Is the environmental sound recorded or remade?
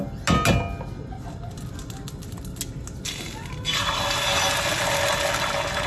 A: recorded